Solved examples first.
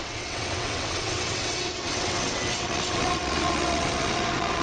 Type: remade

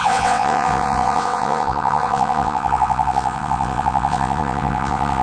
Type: remade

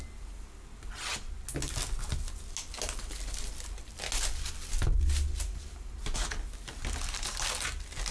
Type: recorded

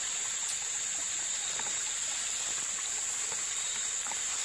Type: recorded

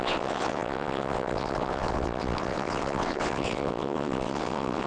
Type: remade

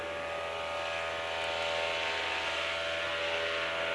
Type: recorded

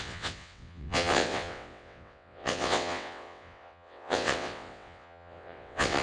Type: remade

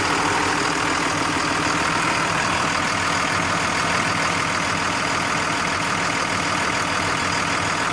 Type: recorded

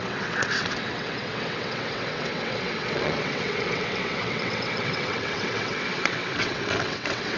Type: remade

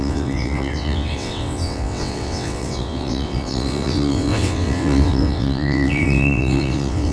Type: remade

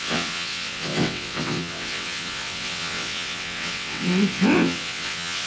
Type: remade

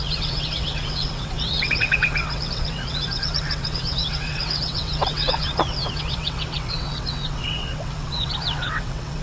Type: remade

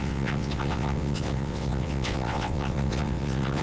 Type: remade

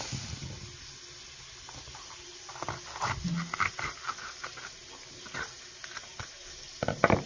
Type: recorded